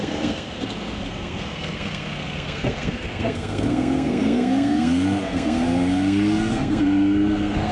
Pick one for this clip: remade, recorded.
remade